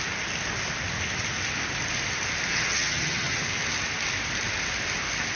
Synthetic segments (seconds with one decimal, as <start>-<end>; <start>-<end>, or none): 2.5-3.4